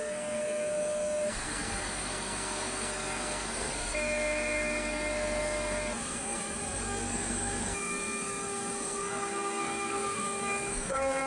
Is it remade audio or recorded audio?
remade